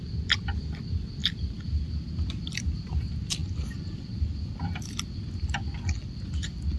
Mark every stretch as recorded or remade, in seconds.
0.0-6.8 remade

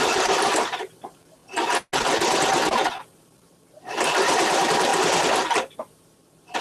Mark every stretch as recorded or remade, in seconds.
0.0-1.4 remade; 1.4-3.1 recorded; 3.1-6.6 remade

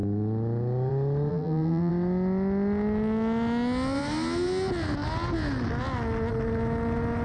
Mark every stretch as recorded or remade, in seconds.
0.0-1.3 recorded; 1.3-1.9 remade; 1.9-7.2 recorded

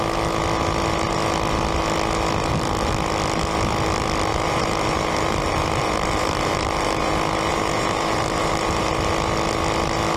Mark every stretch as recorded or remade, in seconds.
0.0-4.3 recorded; 4.3-7.1 remade; 7.1-7.5 recorded; 7.5-8.9 remade; 8.9-10.2 recorded

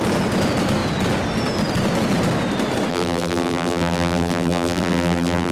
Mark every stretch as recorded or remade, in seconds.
0.0-2.9 recorded; 2.9-5.5 remade

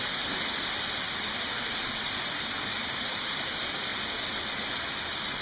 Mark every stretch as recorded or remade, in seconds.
0.0-5.4 recorded